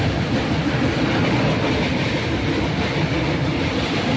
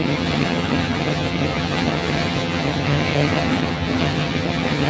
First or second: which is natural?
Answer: first